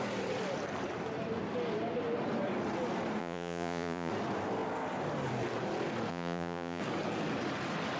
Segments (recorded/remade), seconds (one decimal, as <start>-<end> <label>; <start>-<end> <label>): 0.0-3.2 recorded; 3.2-4.1 remade; 4.1-6.1 recorded; 6.1-6.8 remade; 6.8-8.0 recorded